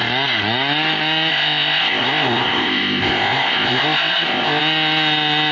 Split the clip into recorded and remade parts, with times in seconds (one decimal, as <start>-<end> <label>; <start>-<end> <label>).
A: 0.0-1.3 recorded; 1.3-4.6 remade; 4.6-5.5 recorded